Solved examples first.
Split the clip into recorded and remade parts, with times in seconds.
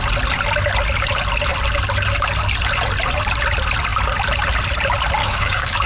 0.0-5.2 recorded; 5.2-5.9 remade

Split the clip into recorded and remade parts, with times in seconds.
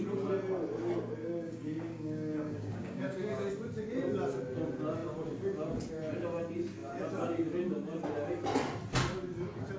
0.0-1.2 recorded; 1.2-3.5 remade; 3.5-9.8 recorded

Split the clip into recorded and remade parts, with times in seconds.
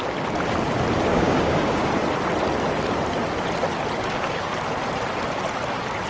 0.0-1.1 recorded; 1.1-1.9 remade; 1.9-4.0 recorded; 4.0-4.5 remade; 4.5-6.1 recorded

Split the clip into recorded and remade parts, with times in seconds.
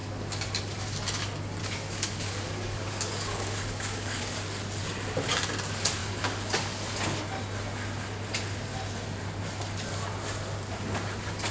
0.0-1.6 recorded; 1.6-4.2 remade; 4.2-6.0 recorded; 6.0-6.9 remade; 6.9-11.5 recorded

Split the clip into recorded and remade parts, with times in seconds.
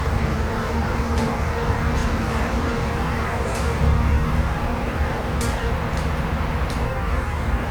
0.0-5.7 remade; 5.7-6.8 recorded; 6.8-7.7 remade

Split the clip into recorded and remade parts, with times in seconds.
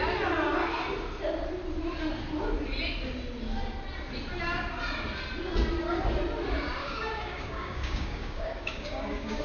0.0-6.8 recorded; 6.8-9.4 remade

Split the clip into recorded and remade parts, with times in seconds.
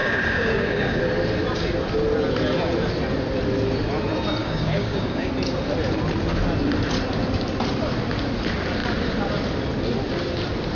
0.0-1.0 remade; 1.0-4.4 recorded; 4.4-5.3 remade; 5.3-10.8 recorded